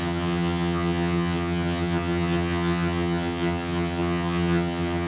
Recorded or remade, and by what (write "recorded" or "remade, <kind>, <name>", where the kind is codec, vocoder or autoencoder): remade, vocoder, HiFi-GAN